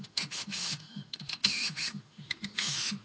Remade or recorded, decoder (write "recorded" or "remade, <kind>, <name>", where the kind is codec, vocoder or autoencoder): remade, autoencoder, DAC-VAE